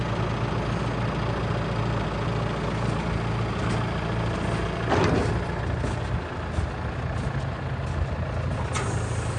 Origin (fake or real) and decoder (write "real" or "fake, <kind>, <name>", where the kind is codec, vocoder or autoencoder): real